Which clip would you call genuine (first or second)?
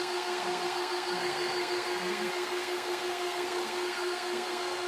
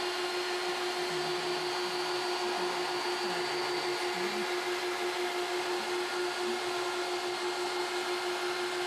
second